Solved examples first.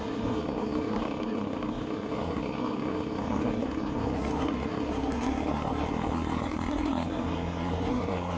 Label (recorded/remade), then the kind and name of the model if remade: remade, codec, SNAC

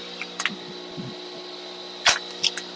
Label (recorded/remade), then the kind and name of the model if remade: recorded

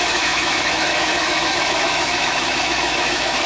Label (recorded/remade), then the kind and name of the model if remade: remade, autoencoder, DAC-VAE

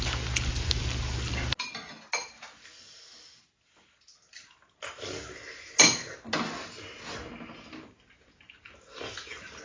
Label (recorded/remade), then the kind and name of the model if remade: recorded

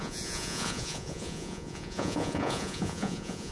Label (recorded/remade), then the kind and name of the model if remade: remade, vocoder, Vocos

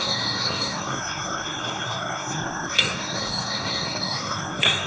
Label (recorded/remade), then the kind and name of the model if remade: remade, codec, SNAC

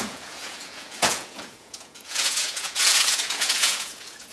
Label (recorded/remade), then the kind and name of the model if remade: remade, vocoder, Vocos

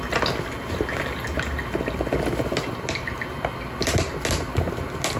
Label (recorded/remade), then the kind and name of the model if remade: recorded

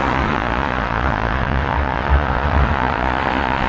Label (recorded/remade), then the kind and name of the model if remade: remade, vocoder, Vocos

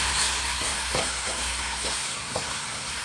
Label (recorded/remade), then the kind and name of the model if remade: remade, codec, SNAC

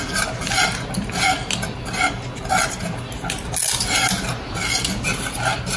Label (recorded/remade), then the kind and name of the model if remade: recorded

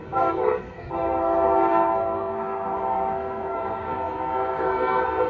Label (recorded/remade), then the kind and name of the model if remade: remade, codec, SNAC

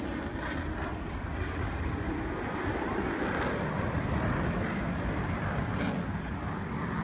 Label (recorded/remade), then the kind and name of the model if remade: recorded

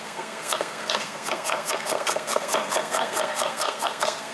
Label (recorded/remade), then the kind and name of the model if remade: remade, codec, SNAC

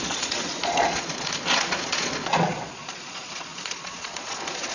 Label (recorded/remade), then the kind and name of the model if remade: remade, vocoder, Vocos